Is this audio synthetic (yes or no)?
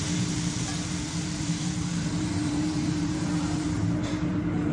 yes